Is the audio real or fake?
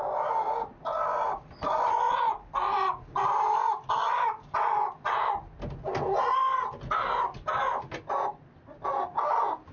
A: real